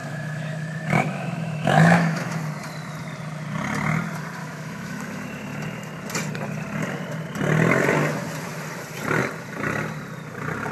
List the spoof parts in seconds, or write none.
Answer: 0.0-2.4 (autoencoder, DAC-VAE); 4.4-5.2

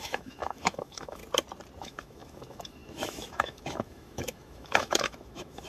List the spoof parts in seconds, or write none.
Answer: 0.0-1.2 (autoencoder, DAC-VAE); 1.8-5.7

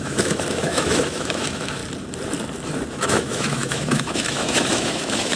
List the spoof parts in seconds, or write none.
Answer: 0.0-1.8 (autoencoder, DAC-VAE); 2.9-5.4